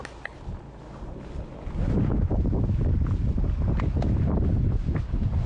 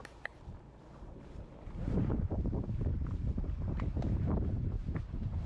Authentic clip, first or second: first